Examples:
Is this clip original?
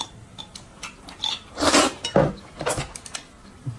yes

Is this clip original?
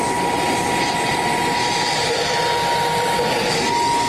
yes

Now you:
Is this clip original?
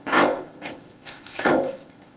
no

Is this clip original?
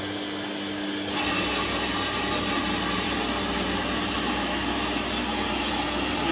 yes